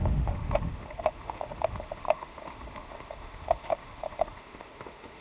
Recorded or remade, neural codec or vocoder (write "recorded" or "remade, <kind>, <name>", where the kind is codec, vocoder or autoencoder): remade, autoencoder, DAC-VAE